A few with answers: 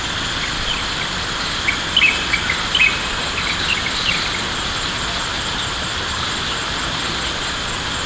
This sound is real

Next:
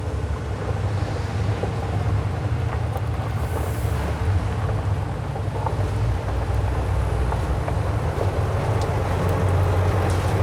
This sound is real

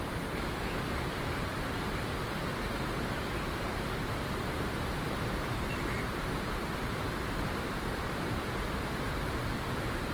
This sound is fake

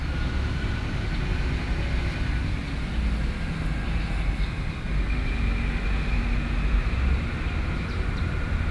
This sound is real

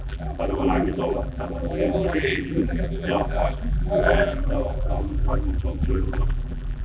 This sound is fake